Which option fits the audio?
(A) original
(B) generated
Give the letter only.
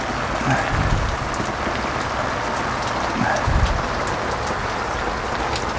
A